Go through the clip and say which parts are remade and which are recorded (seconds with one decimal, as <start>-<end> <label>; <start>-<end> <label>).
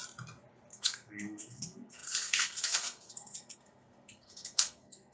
0.0-0.7 recorded; 0.7-5.1 remade